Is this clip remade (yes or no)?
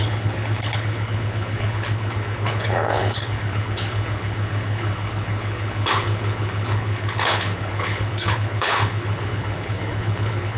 yes